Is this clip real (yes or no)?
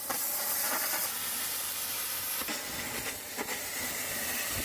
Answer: yes